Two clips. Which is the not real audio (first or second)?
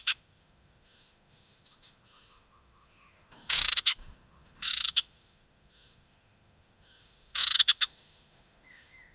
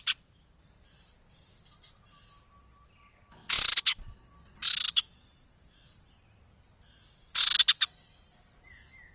first